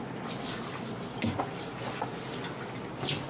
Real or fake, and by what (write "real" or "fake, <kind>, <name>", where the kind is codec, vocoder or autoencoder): real